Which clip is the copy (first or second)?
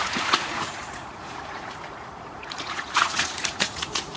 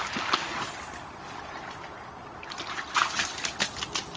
first